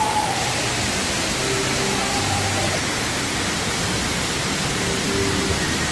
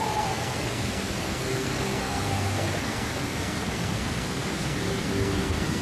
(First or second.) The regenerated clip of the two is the second